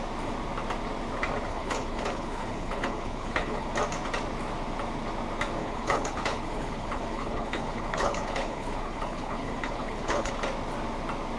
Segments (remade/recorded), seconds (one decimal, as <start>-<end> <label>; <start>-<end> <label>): 0.0-1.5 recorded; 1.5-3.7 remade; 3.7-5.6 recorded; 5.6-10.3 remade; 10.3-11.4 recorded